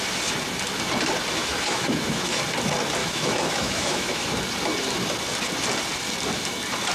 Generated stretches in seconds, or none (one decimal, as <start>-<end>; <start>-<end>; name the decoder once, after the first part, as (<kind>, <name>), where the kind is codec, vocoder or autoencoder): 1.4-2.4 (autoencoder, DAC-VAE); 3.0-4.3